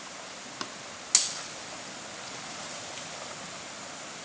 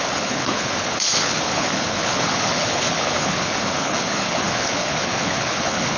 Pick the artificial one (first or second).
second